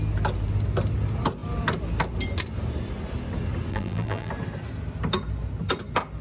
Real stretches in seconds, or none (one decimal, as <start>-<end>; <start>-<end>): 0.0-3.7; 4.3-6.2